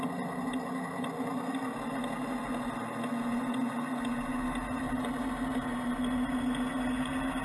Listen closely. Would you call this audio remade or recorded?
recorded